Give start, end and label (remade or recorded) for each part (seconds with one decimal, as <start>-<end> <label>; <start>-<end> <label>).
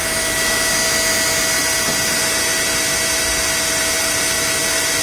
0.0-5.0 recorded